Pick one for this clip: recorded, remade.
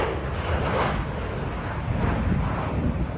recorded